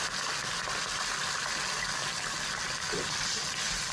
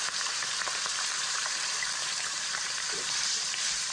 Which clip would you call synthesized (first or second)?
second